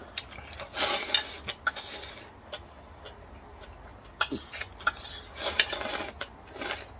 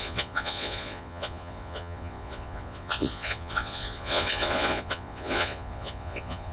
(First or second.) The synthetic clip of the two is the second